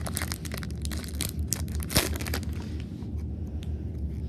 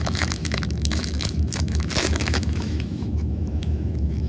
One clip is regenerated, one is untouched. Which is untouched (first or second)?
first